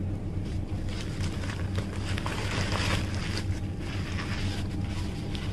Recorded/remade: recorded